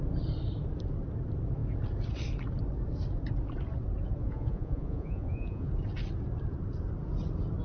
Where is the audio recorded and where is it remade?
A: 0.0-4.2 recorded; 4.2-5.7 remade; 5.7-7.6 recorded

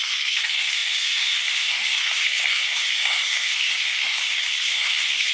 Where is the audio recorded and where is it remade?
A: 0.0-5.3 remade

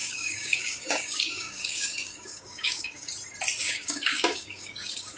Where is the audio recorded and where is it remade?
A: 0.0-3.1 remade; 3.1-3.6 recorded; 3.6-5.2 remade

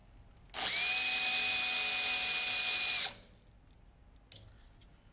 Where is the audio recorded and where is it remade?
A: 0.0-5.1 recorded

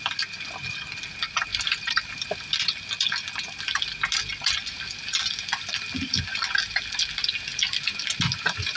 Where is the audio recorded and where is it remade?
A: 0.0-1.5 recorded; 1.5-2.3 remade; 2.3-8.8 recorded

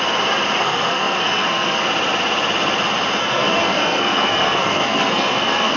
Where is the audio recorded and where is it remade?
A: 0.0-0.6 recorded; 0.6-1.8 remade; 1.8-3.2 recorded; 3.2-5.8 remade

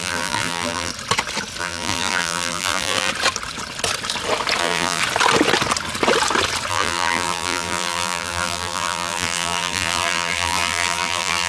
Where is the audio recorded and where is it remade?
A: 0.0-0.9 remade; 0.9-1.6 recorded; 1.6-3.1 remade; 3.1-4.6 recorded; 4.6-5.0 remade; 5.0-6.7 recorded; 6.7-11.5 remade

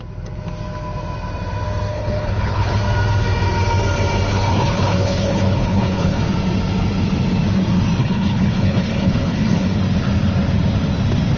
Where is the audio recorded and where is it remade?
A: 0.0-1.9 recorded; 1.9-2.8 remade; 2.8-4.3 recorded; 4.3-6.2 remade; 6.2-8.0 recorded; 8.0-9.8 remade; 9.8-11.4 recorded